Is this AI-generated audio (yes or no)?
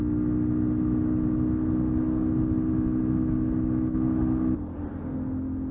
no